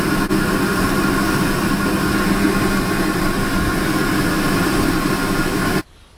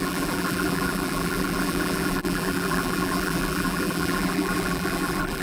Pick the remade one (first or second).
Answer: second